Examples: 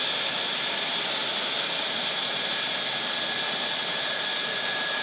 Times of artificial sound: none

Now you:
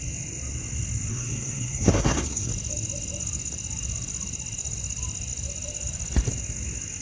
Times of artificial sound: 1.1-2.5 (codec, SNAC)